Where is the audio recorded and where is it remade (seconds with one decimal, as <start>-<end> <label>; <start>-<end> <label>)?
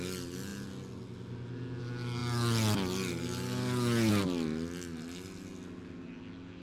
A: 0.0-6.6 recorded